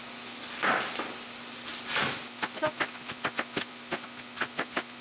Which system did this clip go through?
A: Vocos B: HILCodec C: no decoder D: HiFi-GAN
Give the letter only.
C